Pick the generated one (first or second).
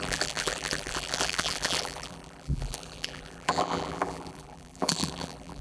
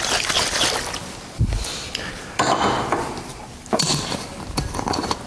first